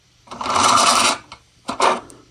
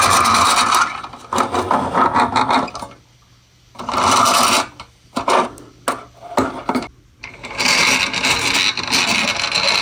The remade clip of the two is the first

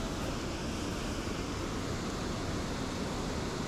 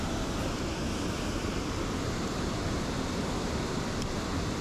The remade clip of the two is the second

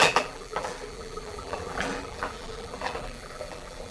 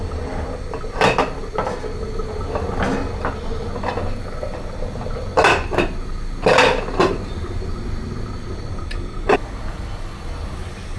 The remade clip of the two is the first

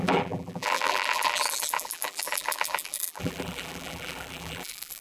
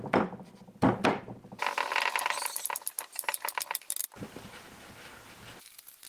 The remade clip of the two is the first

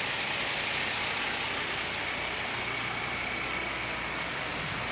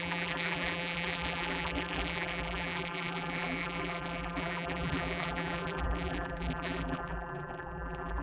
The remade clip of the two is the second